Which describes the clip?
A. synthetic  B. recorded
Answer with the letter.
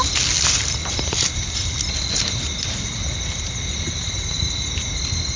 B